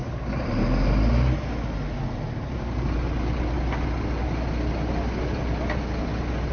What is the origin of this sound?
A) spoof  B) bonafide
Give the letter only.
B